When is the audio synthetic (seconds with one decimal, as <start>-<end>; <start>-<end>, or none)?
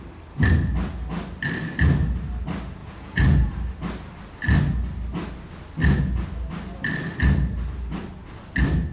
2.8-3.5